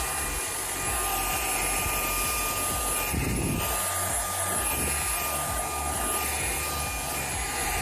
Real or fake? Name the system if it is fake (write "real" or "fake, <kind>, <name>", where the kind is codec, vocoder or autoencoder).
real